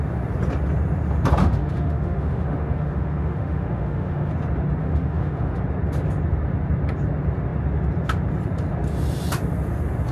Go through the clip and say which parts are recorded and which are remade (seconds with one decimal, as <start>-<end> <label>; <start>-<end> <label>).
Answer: 0.0-1.4 recorded; 1.4-4.3 remade; 4.3-4.8 recorded; 4.8-5.6 remade; 5.6-10.1 recorded